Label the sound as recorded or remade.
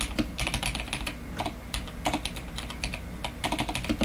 recorded